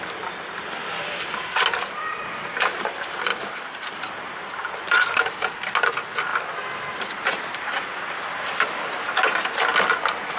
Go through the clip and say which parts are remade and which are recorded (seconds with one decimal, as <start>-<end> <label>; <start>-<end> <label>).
0.0-10.4 recorded